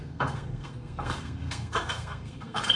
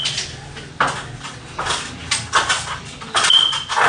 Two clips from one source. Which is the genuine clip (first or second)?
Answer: second